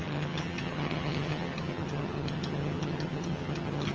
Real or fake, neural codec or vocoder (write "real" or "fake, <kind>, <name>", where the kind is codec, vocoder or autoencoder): fake, vocoder, HiFi-GAN